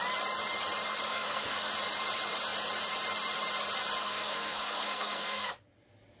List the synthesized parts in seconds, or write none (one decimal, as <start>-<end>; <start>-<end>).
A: 1.1-1.7; 4.0-5.5